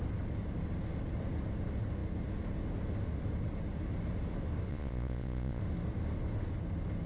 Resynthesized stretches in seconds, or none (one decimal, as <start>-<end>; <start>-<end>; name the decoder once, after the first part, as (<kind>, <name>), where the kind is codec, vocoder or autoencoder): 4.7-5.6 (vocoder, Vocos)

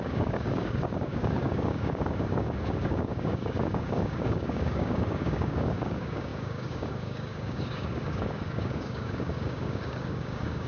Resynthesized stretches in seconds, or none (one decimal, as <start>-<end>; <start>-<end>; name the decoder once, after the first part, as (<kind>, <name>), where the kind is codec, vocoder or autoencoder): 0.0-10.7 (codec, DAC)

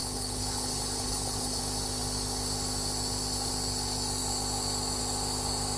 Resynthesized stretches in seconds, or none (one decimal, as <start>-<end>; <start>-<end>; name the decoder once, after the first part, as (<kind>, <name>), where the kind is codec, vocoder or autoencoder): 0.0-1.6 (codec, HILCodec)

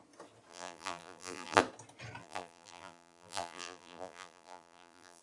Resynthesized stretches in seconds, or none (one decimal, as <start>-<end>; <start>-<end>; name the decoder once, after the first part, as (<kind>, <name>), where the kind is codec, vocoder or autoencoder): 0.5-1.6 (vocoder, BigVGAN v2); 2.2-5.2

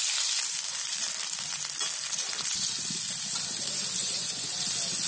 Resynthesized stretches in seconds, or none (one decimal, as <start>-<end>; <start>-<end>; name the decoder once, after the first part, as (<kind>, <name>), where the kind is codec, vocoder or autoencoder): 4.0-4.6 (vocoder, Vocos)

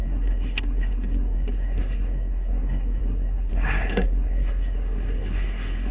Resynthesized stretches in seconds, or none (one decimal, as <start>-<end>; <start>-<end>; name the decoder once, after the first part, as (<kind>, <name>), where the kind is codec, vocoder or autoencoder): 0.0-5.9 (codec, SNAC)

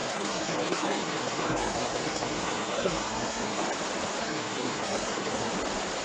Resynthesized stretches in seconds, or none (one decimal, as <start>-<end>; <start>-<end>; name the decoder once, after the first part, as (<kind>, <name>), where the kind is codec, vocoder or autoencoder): 0.0-3.6 (codec, SNAC); 4.2-5.5

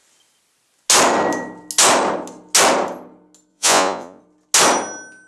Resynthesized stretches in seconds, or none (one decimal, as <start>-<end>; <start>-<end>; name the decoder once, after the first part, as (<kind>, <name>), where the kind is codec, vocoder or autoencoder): 3.5-4.2 (vocoder, Vocos)